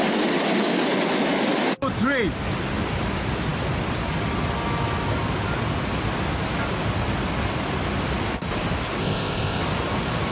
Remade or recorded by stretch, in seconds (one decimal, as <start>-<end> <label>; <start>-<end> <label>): 0.0-9.0 recorded; 9.0-9.6 remade; 9.6-10.3 recorded

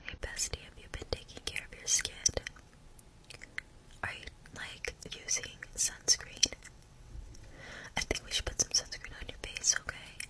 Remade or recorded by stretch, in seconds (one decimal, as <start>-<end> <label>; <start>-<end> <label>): 0.0-2.2 recorded; 2.2-2.7 remade; 2.7-4.7 recorded; 4.7-9.4 remade; 9.4-10.3 recorded

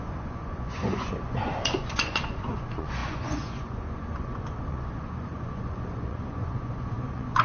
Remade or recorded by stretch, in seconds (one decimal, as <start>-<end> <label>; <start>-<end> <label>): 0.0-7.4 remade

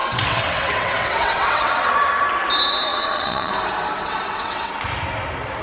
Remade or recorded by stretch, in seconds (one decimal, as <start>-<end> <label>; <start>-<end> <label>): 0.0-1.9 remade; 1.9-2.9 recorded; 2.9-3.5 remade; 3.5-4.0 recorded; 4.0-4.7 remade; 4.7-5.6 recorded

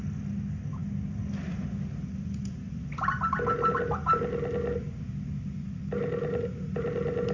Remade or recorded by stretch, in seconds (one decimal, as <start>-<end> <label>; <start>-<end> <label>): 0.0-7.3 recorded

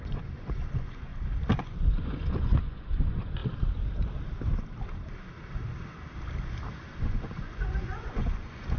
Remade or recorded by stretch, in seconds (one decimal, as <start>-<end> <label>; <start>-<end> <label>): 0.0-1.1 remade; 1.1-1.6 recorded; 1.6-3.4 remade; 3.4-7.0 recorded; 7.0-8.8 remade